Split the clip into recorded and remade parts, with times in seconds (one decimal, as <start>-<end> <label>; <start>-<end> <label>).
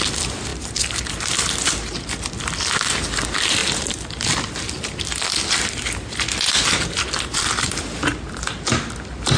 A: 0.0-0.5 recorded; 0.5-1.1 remade; 1.1-9.4 recorded